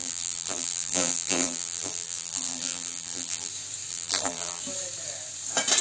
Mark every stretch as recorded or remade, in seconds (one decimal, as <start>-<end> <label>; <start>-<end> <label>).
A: 0.0-3.5 remade; 3.5-3.9 recorded; 3.9-4.6 remade; 4.6-5.8 recorded

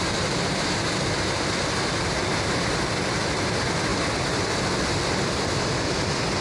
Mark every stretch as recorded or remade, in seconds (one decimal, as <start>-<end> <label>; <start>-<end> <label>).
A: 0.0-6.4 recorded

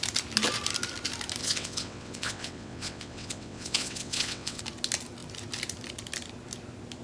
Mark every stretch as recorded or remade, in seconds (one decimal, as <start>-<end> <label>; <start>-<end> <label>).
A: 0.0-1.4 recorded; 1.4-4.6 remade; 4.6-7.0 recorded

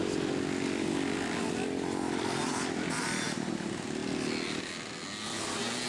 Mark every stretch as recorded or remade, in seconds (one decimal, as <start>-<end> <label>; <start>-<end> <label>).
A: 0.0-5.9 recorded

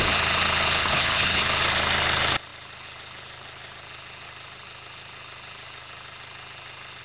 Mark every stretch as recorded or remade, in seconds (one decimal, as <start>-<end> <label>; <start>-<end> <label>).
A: 0.0-0.8 recorded; 0.8-1.4 remade; 1.4-7.0 recorded